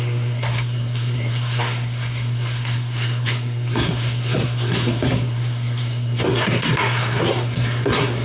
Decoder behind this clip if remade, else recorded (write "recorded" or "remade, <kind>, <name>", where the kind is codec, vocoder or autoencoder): remade, codec, SNAC